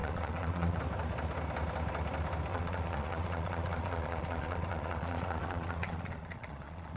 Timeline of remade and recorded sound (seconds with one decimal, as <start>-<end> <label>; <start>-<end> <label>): 0.0-0.8 remade; 0.8-2.5 recorded; 2.5-7.0 remade